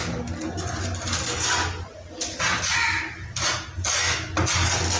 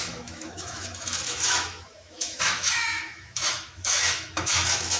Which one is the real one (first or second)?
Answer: first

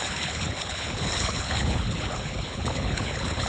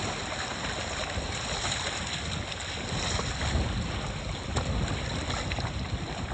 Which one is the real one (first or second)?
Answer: second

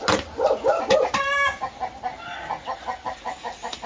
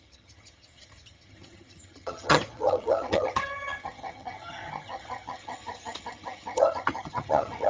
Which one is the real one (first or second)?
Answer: first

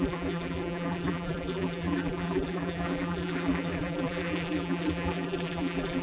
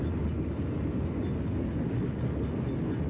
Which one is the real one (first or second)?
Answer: second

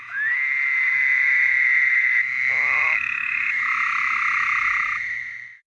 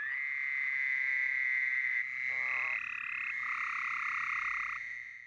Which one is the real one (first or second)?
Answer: second